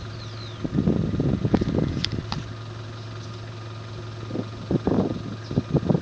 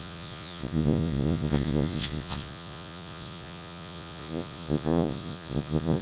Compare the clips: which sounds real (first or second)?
first